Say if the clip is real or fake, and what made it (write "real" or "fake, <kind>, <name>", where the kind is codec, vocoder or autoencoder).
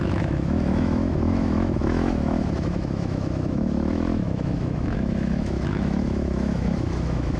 fake, autoencoder, DAC-VAE